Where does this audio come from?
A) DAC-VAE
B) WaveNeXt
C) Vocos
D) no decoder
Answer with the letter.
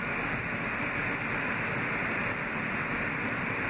D